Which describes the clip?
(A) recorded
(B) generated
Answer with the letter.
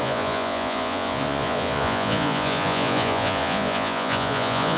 B